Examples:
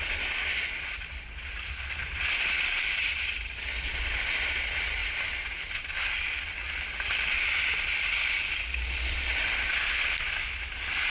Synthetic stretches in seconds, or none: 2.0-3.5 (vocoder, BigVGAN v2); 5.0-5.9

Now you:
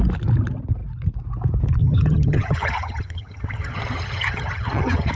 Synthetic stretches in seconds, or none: 1.8-5.1 (vocoder, HiFi-GAN)

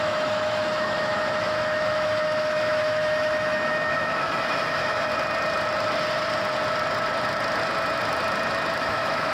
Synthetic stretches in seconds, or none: 0.0-5.1 (autoencoder, DAC-VAE); 8.8-9.3